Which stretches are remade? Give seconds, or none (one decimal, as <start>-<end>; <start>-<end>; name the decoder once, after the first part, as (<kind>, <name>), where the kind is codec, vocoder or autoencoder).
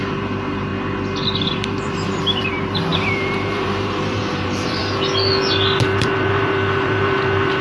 0.0-0.7 (vocoder, BigVGAN v2); 1.5-4.8; 5.8-7.6